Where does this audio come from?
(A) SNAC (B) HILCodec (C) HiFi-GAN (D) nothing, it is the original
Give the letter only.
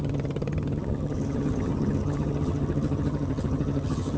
C